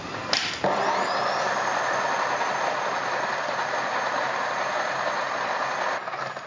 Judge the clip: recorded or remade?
recorded